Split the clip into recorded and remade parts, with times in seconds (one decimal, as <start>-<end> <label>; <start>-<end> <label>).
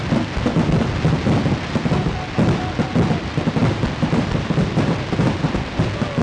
0.0-3.6 recorded; 3.6-5.8 remade; 5.8-6.2 recorded